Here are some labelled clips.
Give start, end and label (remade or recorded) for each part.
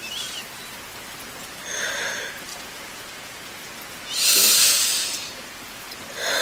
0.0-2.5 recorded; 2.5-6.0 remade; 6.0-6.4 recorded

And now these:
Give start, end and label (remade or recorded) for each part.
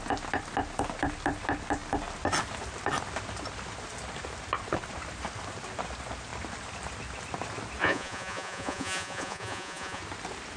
0.0-7.8 recorded; 7.8-10.0 remade; 10.0-10.6 recorded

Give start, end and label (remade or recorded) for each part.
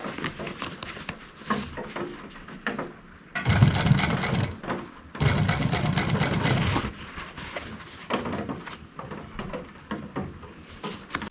0.0-11.3 recorded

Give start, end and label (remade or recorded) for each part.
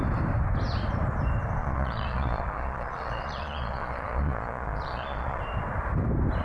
0.0-1.6 recorded; 1.6-5.4 remade; 5.4-6.4 recorded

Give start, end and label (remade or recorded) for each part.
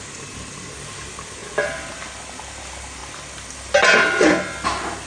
0.0-5.1 recorded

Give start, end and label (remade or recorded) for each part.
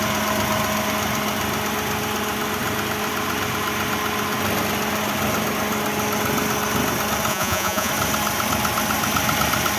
0.0-7.3 recorded; 7.3-7.9 remade; 7.9-9.8 recorded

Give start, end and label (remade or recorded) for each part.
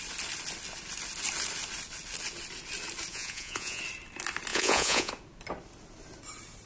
0.0-3.1 recorded; 3.1-3.8 remade; 3.8-4.5 recorded; 4.5-5.1 remade; 5.1-6.7 recorded